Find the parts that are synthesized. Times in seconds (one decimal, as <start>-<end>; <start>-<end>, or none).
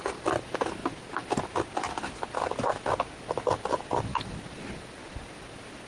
none